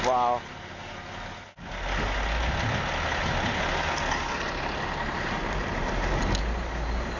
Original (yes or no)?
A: yes